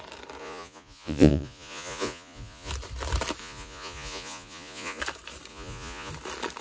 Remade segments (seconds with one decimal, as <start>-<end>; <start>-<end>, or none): 0.4-2.7; 3.4-5.0; 5.5-6.1